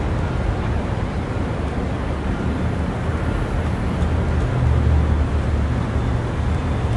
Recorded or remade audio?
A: recorded